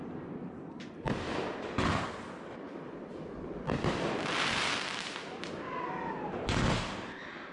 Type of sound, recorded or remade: recorded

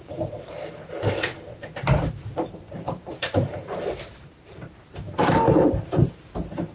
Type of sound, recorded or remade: remade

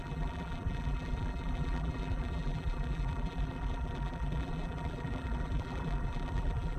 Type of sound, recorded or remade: remade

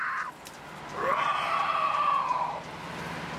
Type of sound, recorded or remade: recorded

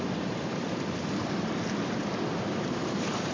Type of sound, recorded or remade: remade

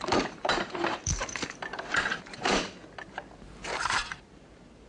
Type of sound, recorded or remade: remade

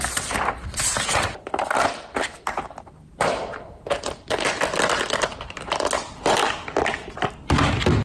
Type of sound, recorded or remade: remade